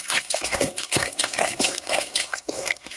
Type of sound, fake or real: fake